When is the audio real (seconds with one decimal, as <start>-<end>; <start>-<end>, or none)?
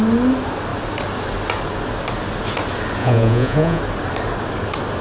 0.0-3.0; 3.8-5.0